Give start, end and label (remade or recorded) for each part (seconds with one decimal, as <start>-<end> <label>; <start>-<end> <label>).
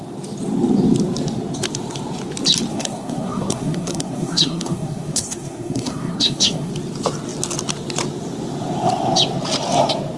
0.0-2.7 recorded; 2.7-6.7 remade; 6.7-10.2 recorded